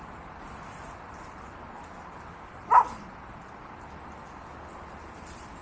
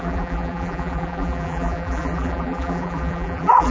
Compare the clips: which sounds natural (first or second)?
first